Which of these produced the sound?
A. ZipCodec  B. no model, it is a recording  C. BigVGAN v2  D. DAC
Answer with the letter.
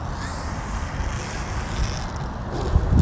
B